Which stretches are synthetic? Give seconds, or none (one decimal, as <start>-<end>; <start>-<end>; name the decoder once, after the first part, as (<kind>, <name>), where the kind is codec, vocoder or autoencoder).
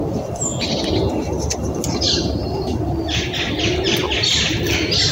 none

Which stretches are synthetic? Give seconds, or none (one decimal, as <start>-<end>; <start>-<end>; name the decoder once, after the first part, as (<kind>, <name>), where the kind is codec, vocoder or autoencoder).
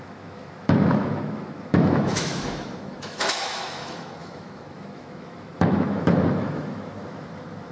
0.0-7.7 (autoencoder, DAC-VAE)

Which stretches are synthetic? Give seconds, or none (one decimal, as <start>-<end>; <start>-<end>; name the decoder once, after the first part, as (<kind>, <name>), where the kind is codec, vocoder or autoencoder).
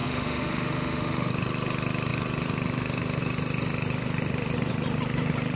0.0-1.3 (autoencoder, DAC-VAE)